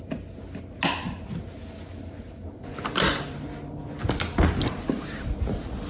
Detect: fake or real real